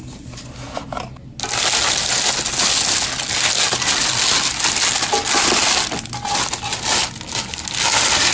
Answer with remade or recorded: recorded